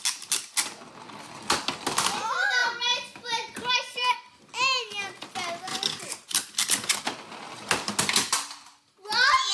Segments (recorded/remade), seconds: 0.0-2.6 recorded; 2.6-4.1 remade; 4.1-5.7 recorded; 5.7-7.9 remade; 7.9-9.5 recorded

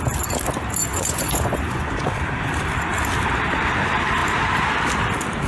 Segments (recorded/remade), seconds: 0.0-0.9 recorded; 0.9-2.2 remade; 2.2-5.5 recorded

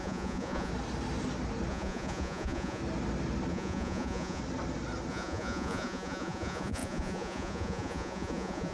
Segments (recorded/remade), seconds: 0.0-0.7 remade; 0.7-1.7 recorded; 1.7-2.8 remade; 2.8-3.5 recorded; 3.5-4.4 remade; 4.4-5.1 recorded; 5.1-8.7 remade